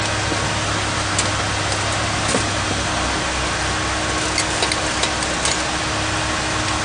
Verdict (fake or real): real